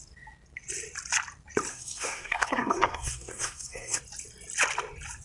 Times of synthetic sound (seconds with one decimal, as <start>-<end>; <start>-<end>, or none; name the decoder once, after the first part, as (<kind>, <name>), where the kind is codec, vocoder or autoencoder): 1.7-4.0 (codec, SNAC)